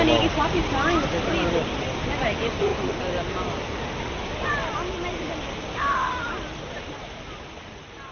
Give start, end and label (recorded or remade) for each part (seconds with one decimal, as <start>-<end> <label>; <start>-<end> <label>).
0.0-8.1 recorded